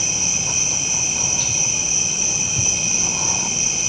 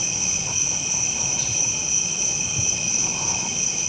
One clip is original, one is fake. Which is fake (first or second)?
second